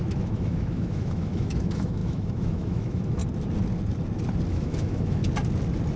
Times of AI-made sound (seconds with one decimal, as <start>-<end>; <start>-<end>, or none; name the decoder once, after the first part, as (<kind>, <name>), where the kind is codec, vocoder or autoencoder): 0.0-3.2 (autoencoder, DAC-VAE); 4.5-5.2